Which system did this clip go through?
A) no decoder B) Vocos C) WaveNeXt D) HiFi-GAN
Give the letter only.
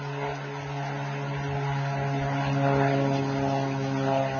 A